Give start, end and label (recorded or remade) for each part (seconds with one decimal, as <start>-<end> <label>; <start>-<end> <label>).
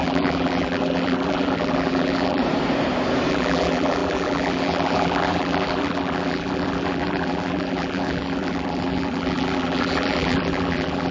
0.0-2.4 remade; 2.4-3.3 recorded; 3.3-11.1 remade